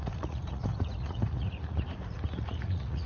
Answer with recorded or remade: remade